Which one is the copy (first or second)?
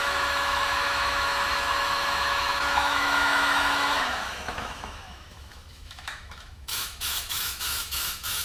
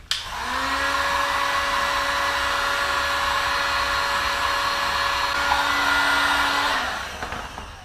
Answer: first